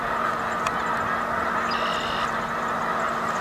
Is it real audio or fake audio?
real